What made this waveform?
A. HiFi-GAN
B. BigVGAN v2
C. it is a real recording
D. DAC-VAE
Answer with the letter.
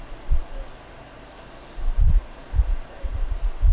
C